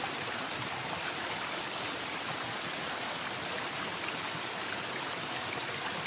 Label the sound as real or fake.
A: real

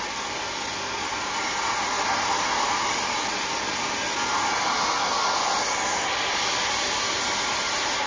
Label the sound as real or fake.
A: real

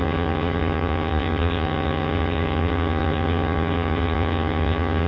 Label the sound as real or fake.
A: fake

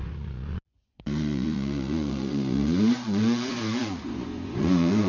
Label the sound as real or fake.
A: fake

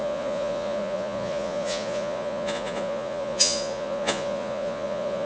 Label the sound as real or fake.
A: fake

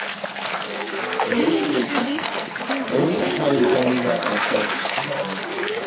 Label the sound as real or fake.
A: fake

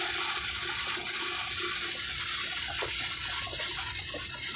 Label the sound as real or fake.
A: real